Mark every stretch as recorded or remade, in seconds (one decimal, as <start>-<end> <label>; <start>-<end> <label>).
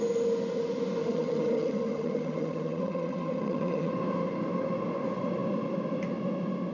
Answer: 0.0-1.0 recorded; 1.0-3.9 remade; 3.9-6.7 recorded